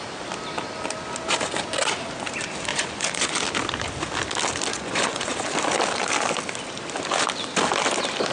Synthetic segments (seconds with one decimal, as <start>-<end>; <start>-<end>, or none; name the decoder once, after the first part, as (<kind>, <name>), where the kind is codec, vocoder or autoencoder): 2.7-3.4 (vocoder, Vocos); 4.7-5.3